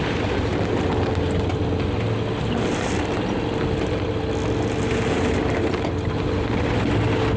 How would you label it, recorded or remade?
recorded